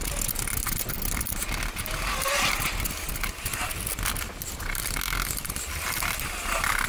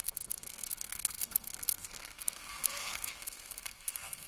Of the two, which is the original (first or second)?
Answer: first